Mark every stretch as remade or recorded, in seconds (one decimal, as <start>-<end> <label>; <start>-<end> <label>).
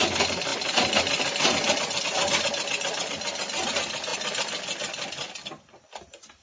0.0-6.4 recorded